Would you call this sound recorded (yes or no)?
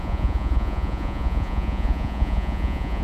no